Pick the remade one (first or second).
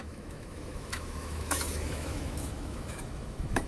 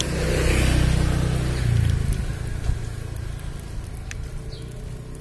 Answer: first